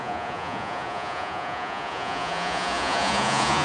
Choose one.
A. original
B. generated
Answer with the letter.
B